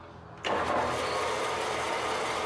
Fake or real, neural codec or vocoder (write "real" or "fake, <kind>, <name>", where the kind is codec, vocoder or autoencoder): real